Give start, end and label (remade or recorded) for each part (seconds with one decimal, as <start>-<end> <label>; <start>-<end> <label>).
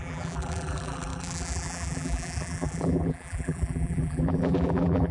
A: 0.0-5.1 remade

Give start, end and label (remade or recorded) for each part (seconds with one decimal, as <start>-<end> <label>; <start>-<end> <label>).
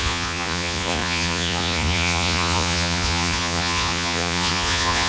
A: 0.0-5.1 remade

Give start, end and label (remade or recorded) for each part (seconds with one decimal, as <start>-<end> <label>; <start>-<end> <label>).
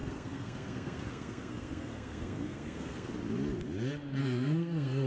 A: 0.0-3.1 remade; 3.1-4.2 recorded; 4.2-5.1 remade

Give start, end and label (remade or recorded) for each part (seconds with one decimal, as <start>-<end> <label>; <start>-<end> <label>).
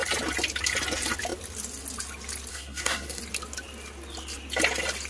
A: 0.0-2.5 recorded; 2.5-3.2 remade; 3.2-5.1 recorded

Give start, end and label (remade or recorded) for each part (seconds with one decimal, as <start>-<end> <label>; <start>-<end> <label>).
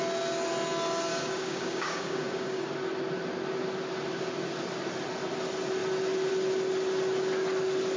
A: 0.0-1.1 recorded; 1.1-2.7 remade; 2.7-8.0 recorded